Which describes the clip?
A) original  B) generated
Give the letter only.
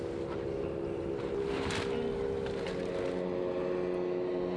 A